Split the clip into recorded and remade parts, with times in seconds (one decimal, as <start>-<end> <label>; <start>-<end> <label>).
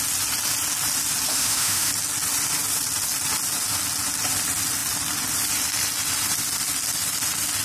0.0-1.3 recorded; 1.3-1.9 remade; 1.9-7.6 recorded